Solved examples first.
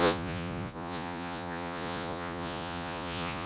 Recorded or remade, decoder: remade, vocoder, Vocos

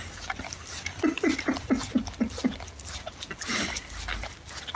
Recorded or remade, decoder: recorded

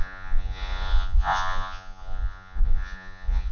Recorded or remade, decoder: remade, vocoder, Vocos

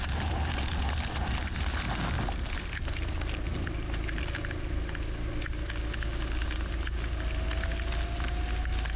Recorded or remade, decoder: recorded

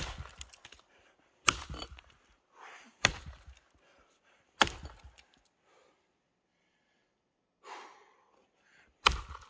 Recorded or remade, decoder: recorded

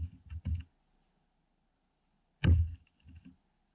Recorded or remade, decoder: recorded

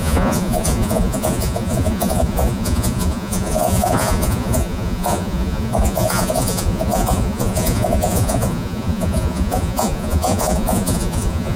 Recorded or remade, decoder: remade, vocoder, Vocos